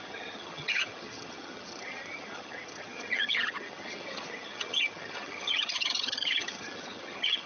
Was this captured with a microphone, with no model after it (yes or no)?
no